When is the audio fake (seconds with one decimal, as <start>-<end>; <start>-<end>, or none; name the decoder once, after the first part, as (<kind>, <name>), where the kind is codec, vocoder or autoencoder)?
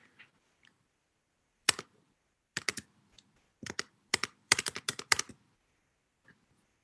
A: 0.0-3.0 (vocoder, BigVGAN v2); 3.5-5.3